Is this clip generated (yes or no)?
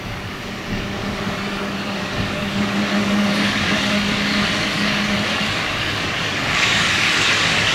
yes